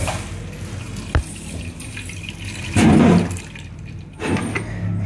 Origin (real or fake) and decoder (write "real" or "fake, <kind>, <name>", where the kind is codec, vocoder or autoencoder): real